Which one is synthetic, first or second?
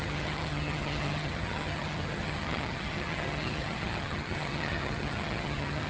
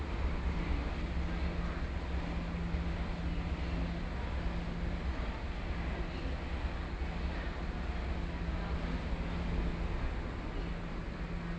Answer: first